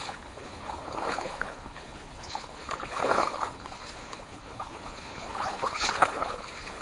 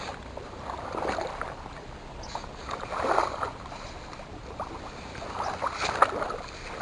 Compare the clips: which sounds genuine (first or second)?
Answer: second